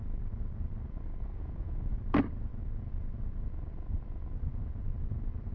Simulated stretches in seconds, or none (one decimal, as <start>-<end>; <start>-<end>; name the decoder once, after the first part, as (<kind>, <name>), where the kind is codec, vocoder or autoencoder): 1.3-2.0 (vocoder, Vocos)